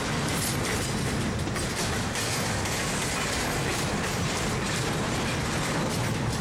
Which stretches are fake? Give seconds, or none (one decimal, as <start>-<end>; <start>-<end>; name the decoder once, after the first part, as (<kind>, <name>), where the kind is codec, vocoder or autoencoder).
3.7-4.8 (vocoder, BigVGAN v2)